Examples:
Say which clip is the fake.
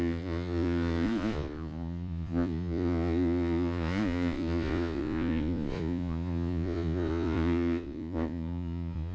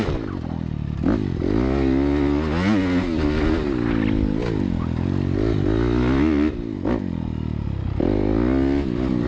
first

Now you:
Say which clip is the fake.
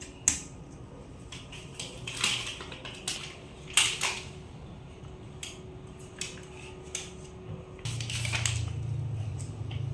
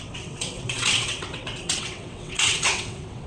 second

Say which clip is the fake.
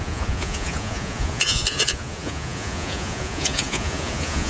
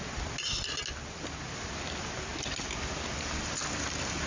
first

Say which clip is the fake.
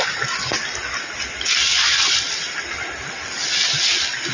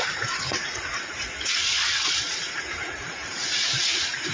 second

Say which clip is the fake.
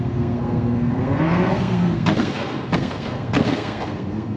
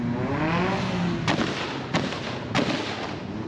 first